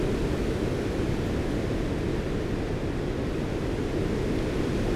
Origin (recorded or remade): recorded